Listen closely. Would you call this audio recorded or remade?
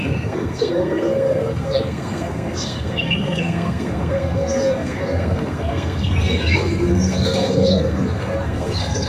remade